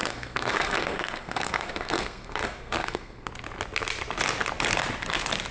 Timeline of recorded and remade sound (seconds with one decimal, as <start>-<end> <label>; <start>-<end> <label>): 0.0-3.3 remade; 3.3-5.5 recorded

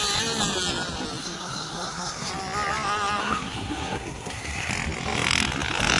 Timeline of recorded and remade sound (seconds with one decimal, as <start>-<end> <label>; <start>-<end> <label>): 0.0-1.2 recorded; 1.2-2.3 remade; 2.3-3.2 recorded; 3.2-4.7 remade; 4.7-6.0 recorded

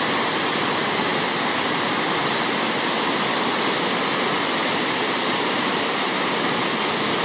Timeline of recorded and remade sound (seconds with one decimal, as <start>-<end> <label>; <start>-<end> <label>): 0.0-7.2 recorded

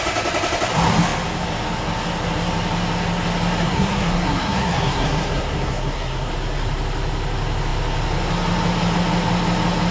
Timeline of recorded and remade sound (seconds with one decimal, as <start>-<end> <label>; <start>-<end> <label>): 0.0-3.6 recorded; 3.6-6.3 remade; 6.3-9.9 recorded

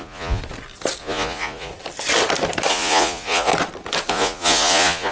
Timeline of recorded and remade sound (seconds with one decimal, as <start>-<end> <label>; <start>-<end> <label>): 0.0-0.4 remade; 0.4-1.0 recorded; 1.0-1.7 remade; 1.7-2.7 recorded; 2.7-3.5 remade; 3.5-4.1 recorded; 4.1-5.1 remade

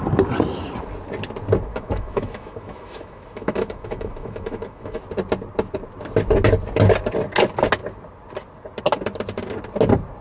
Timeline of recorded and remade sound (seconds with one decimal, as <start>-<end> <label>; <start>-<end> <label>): 0.0-1.7 recorded; 1.7-5.0 remade; 5.0-10.2 recorded

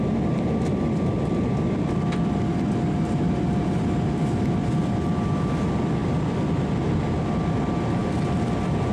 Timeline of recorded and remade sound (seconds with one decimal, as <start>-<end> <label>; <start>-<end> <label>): 0.0-8.9 recorded